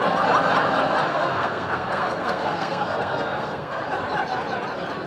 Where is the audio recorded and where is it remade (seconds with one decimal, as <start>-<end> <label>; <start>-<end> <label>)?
0.0-1.1 recorded; 1.1-3.8 remade; 3.8-5.1 recorded